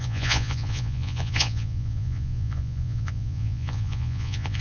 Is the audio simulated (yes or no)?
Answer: yes